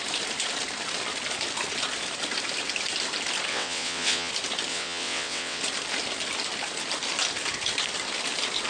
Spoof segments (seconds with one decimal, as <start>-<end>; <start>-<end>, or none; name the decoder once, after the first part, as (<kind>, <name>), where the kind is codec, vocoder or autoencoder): 3.5-4.3 (vocoder, WaveNeXt); 4.7-5.6